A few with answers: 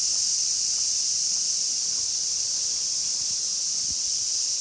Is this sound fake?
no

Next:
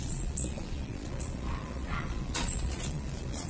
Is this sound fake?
yes